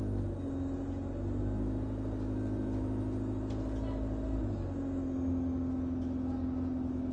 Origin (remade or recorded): recorded